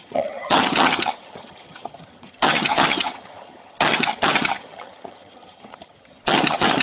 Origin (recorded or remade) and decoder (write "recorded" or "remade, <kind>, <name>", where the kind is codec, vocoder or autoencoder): remade, vocoder, HiFi-GAN